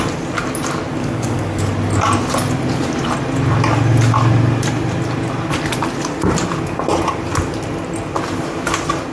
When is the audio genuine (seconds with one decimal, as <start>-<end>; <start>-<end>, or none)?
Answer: 0.0-1.0; 1.6-9.1